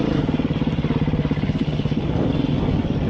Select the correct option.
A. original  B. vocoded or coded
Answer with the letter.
A